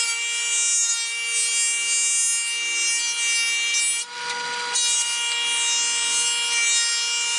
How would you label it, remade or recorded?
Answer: recorded